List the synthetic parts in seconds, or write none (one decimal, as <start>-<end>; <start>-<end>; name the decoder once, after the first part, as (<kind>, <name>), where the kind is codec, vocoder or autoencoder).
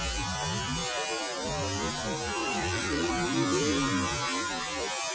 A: 2.4-3.1 (vocoder, Vocos)